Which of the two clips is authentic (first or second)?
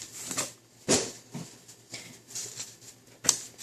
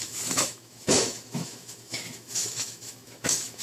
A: first